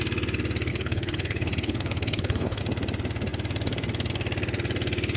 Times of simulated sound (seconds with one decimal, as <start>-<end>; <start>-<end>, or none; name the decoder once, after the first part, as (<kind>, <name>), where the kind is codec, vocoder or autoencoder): 0.7-2.6 (codec, HILCodec)